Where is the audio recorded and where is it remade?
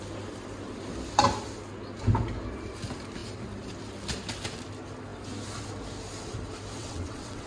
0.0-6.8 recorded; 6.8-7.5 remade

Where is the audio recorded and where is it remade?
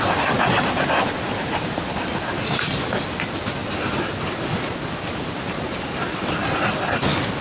0.0-7.4 recorded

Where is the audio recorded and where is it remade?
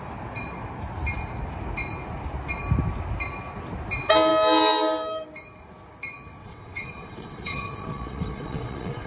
0.0-6.4 recorded; 6.4-9.1 remade